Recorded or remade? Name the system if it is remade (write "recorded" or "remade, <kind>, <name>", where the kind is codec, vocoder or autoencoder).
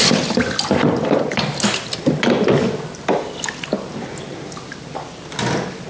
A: recorded